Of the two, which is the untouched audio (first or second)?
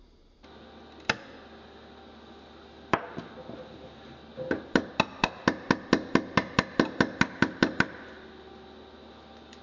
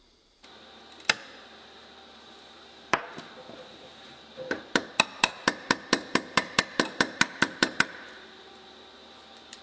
first